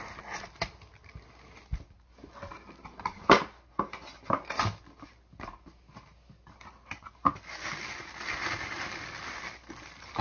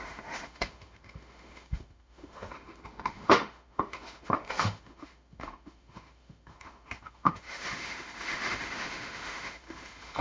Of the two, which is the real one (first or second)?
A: first